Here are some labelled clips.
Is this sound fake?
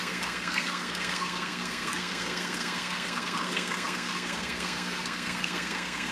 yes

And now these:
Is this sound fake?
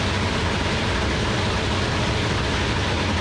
no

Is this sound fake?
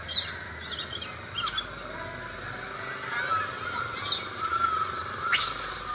no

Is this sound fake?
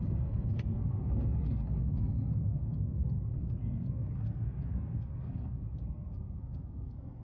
yes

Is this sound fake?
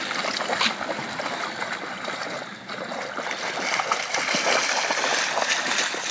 no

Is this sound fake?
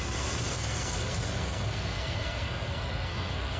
yes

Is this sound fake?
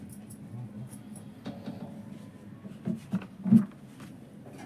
no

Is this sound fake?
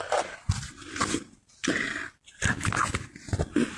no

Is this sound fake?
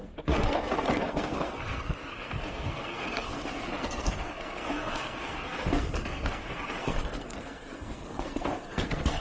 yes